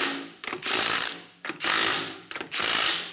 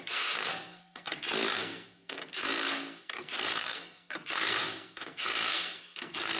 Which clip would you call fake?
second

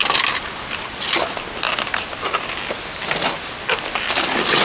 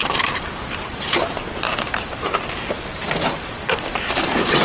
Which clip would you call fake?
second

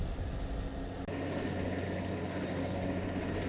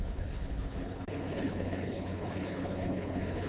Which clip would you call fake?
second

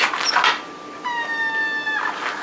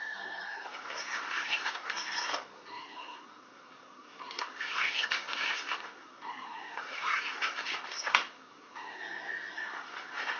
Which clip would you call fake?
second